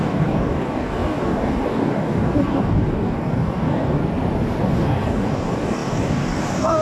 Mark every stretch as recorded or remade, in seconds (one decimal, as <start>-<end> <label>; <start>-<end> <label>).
0.0-4.0 remade; 4.0-4.6 recorded; 4.6-6.8 remade